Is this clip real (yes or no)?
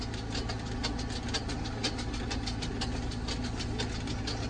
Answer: yes